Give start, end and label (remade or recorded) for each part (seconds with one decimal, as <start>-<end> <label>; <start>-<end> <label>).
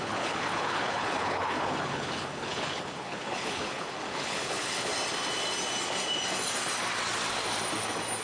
0.0-4.9 remade; 4.9-8.2 recorded